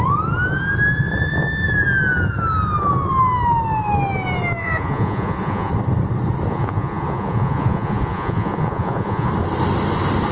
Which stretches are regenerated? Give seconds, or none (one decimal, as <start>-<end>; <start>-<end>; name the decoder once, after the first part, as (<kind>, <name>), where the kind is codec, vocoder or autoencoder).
4.6-5.7 (vocoder, Vocos); 6.5-9.3